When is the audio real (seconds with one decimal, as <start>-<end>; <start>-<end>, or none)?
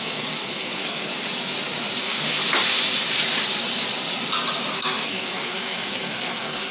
1.1-2.0; 2.4-4.7